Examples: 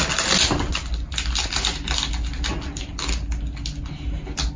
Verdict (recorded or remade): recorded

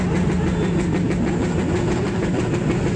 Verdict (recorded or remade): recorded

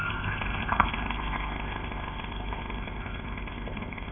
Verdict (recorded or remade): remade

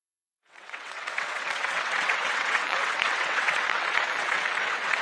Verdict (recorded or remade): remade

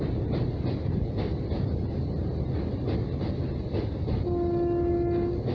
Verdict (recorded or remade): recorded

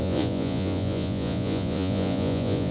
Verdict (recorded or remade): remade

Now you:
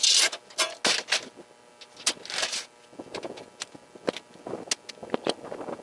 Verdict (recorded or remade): recorded